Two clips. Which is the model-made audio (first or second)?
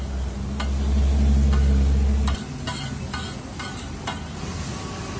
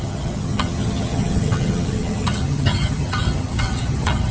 second